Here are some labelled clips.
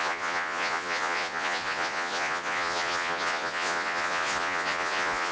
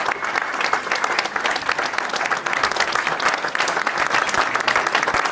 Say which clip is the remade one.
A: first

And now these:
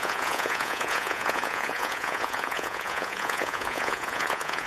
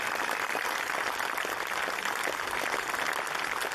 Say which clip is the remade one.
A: first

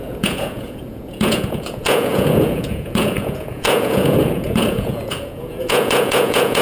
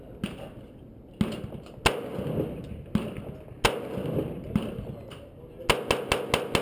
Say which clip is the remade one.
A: first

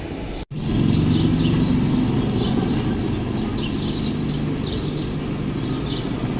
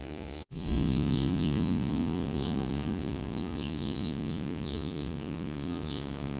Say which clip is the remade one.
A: second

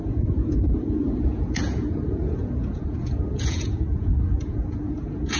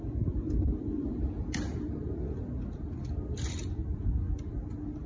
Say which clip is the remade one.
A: first